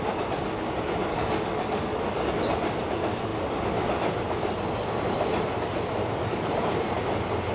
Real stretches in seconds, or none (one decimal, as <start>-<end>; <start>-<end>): 0.0-1.1; 2.3-6.0; 6.6-7.5